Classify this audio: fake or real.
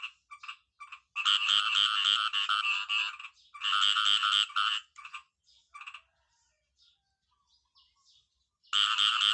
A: real